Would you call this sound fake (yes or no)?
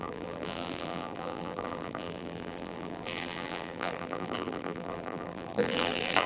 yes